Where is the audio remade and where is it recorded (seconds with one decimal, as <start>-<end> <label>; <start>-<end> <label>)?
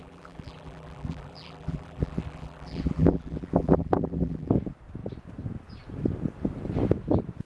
0.0-4.5 remade; 4.5-7.5 recorded